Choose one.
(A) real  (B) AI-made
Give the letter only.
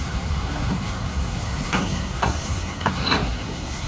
B